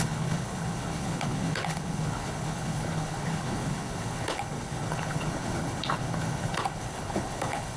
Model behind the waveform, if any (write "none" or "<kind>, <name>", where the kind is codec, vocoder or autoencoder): codec, HILCodec